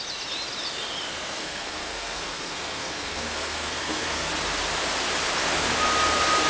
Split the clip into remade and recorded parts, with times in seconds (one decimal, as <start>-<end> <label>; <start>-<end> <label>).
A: 0.0-1.1 recorded; 1.1-4.3 remade; 4.3-6.5 recorded